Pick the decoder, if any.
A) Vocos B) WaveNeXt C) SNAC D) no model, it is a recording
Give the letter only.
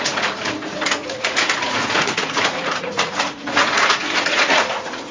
A